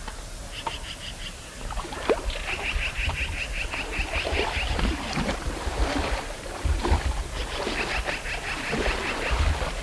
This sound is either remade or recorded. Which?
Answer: recorded